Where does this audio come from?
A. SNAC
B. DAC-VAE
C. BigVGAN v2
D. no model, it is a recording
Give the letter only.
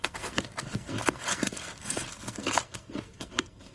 A